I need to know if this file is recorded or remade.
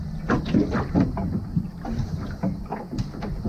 recorded